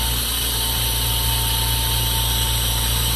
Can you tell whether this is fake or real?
real